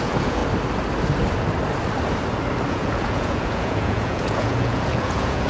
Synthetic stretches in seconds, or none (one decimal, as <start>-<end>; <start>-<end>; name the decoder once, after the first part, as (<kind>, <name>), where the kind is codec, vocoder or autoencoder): 0.0-0.4 (vocoder, Vocos); 2.7-5.5

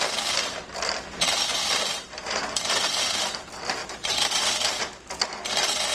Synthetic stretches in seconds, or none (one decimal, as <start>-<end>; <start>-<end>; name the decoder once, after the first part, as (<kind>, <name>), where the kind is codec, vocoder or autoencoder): 1.5-2.4 (vocoder, BigVGAN v2); 3.8-4.8

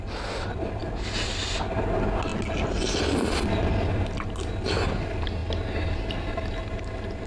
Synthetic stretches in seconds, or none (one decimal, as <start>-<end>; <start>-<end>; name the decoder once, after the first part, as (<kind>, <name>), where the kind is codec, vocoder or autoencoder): none

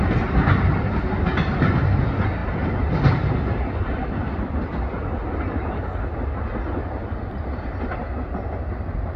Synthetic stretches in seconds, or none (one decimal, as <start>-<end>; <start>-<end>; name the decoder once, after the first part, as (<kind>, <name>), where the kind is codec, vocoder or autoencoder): none